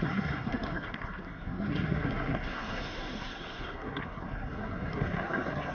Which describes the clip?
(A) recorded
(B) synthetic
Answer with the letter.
B